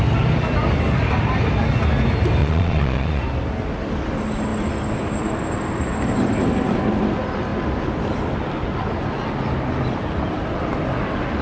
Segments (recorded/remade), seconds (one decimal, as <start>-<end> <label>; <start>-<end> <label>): 0.0-2.4 recorded; 2.4-3.2 remade; 3.2-11.4 recorded

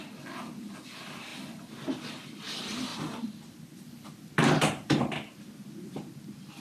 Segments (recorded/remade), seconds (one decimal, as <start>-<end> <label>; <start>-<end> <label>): 0.0-2.9 recorded; 2.9-5.0 remade; 5.0-6.6 recorded

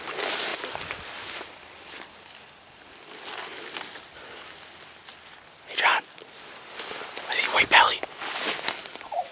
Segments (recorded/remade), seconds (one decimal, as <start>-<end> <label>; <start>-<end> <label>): 0.0-0.5 recorded; 0.5-3.1 remade; 3.1-5.9 recorded; 5.9-6.7 remade; 6.7-9.3 recorded

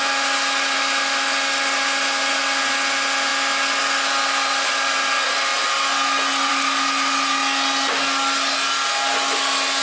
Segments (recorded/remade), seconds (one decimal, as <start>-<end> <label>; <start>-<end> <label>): 0.0-9.8 recorded

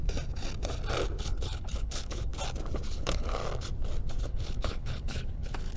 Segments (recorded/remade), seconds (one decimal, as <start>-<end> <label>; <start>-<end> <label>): 0.0-1.2 recorded; 1.2-2.3 remade; 2.3-2.9 recorded; 2.9-3.4 remade; 3.4-4.3 recorded; 4.3-5.8 remade

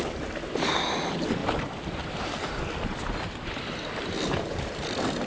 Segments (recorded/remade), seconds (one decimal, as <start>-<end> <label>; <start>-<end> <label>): 0.0-5.3 remade

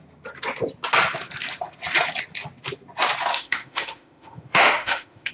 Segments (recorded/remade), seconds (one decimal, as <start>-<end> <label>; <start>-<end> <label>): 0.0-3.3 recorded; 3.3-5.3 remade

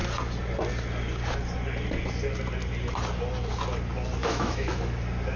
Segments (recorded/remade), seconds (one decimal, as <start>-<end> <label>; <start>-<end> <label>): 0.0-4.2 recorded; 4.2-4.8 remade; 4.8-5.4 recorded